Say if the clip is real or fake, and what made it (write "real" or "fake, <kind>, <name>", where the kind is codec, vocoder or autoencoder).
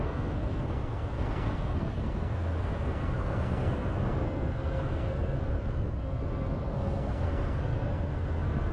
fake, codec, SNAC